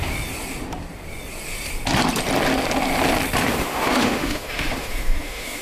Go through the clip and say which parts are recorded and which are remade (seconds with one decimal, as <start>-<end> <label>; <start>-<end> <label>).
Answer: 0.0-3.6 recorded; 3.6-5.6 remade